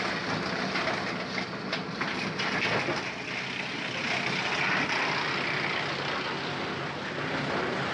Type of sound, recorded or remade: recorded